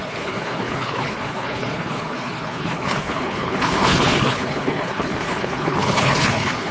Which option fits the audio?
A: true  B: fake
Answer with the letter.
B